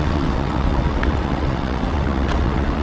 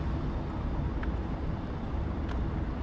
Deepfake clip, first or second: first